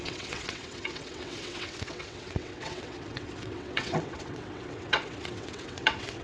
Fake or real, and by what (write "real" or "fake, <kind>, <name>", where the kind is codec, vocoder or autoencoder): fake, vocoder, WaveNeXt